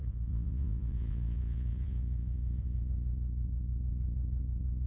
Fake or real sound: fake